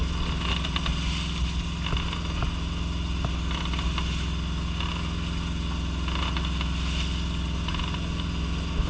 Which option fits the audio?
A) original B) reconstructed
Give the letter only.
A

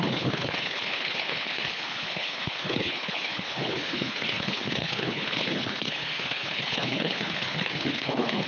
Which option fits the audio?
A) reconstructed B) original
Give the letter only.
A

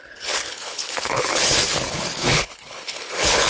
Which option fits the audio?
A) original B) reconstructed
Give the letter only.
B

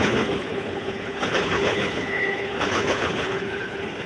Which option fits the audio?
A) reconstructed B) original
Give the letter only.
A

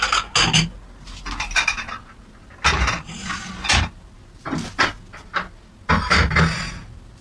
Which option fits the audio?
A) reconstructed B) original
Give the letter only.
B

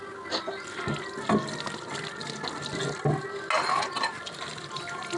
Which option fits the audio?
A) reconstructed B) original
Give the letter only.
B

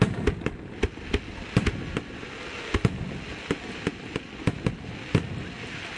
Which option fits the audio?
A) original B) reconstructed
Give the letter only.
A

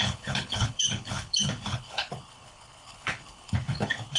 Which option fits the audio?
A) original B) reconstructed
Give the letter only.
B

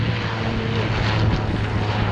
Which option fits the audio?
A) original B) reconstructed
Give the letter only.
A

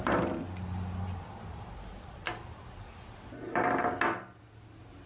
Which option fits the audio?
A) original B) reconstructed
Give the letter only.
A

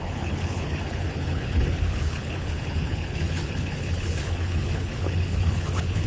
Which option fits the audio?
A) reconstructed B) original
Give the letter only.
A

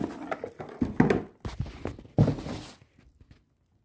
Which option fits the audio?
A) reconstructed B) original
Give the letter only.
B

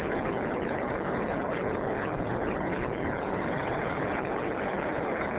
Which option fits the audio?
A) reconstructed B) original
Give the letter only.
A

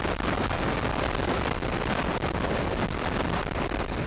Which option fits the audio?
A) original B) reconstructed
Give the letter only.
A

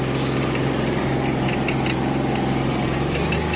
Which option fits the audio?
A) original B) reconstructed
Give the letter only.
A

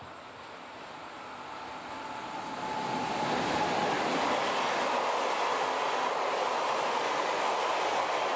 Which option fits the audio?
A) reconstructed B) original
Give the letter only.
B